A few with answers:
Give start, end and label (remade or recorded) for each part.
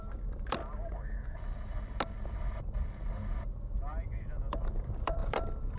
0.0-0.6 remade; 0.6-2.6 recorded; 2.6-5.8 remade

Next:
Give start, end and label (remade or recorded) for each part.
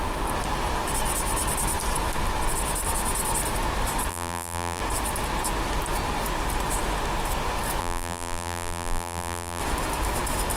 0.0-4.1 recorded; 4.1-4.8 remade; 4.8-7.8 recorded; 7.8-9.6 remade; 9.6-10.6 recorded